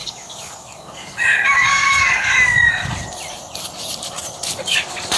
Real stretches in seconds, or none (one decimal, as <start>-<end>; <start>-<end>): 2.7-5.2